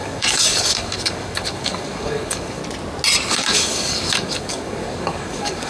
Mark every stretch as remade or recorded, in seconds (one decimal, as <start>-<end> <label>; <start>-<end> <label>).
0.0-2.6 remade; 2.6-3.3 recorded; 3.3-5.7 remade